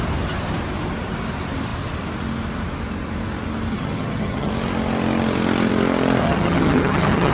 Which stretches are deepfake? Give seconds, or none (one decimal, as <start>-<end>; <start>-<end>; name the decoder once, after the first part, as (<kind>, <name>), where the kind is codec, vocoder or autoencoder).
3.7-4.5 (vocoder, HiFi-GAN); 6.2-7.3